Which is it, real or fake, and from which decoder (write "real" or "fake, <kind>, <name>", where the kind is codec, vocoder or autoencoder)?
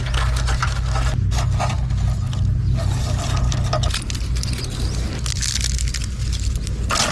real